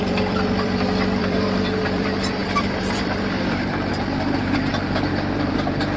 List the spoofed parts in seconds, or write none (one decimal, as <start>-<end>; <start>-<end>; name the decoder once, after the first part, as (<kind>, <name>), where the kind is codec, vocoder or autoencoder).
0.0-5.1 (vocoder, BigVGAN v2)